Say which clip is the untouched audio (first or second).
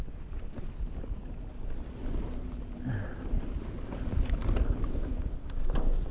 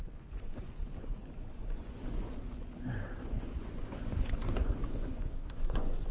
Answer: first